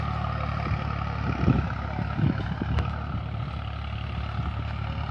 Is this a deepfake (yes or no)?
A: no